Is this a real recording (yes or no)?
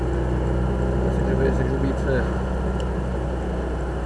yes